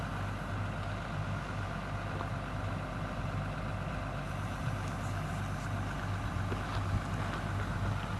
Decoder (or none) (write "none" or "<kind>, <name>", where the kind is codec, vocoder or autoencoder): none